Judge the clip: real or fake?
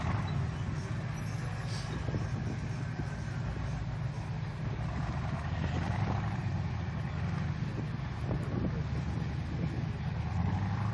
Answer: real